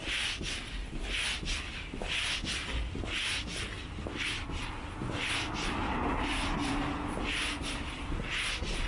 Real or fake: real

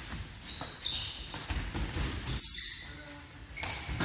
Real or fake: real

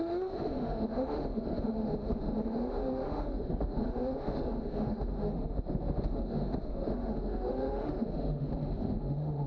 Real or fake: fake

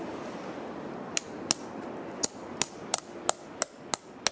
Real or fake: real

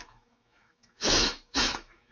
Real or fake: fake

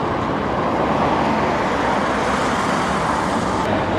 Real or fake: fake